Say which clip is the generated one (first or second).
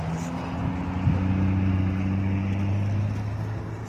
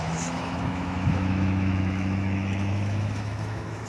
second